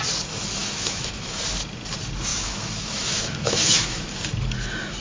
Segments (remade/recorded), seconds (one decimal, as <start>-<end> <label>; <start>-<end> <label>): 0.0-0.6 recorded; 0.6-1.4 remade; 1.4-2.3 recorded; 2.3-4.2 remade; 4.2-5.0 recorded